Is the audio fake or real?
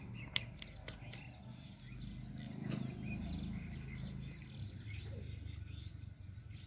real